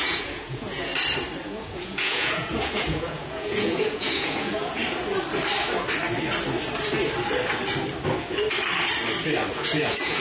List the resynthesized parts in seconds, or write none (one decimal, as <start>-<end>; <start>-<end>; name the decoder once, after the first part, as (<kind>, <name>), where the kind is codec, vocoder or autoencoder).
0.0-0.9 (vocoder, Vocos); 1.4-4.8; 9.5-10.2